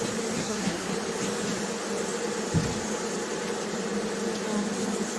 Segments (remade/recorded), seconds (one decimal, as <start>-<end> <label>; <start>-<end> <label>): 0.0-0.4 recorded; 0.4-0.9 remade; 0.9-5.2 recorded